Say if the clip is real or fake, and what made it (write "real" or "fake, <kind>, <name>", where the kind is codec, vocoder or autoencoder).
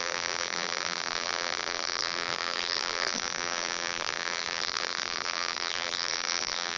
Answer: fake, vocoder, BigVGAN v2